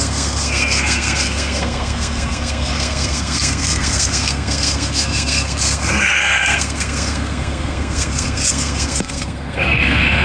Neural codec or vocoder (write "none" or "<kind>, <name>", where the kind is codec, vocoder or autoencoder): codec, SNAC